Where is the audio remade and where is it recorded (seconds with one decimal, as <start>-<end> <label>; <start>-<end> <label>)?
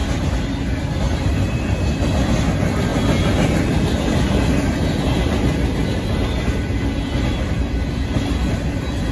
0.0-9.1 recorded